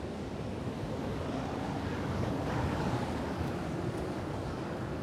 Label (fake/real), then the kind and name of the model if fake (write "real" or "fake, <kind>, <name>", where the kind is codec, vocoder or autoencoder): fake, codec, DAC